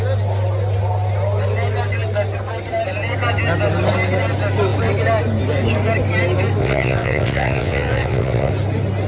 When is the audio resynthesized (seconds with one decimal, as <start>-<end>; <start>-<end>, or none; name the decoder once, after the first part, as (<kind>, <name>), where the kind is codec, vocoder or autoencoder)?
6.6-8.5 (vocoder, WaveNeXt)